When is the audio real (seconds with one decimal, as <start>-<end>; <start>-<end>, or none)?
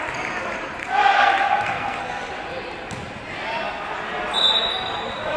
0.0-0.8; 2.2-5.4